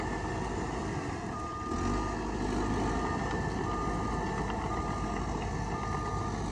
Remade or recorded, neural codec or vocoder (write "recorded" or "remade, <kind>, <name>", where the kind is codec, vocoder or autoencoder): recorded